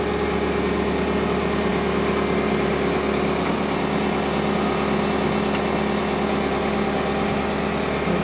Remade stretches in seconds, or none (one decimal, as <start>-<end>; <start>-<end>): none